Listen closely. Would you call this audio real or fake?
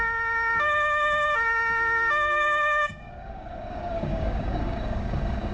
fake